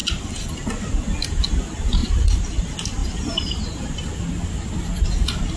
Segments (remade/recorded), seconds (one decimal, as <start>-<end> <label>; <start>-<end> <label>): 0.0-3.0 recorded; 3.0-3.9 remade; 3.9-5.6 recorded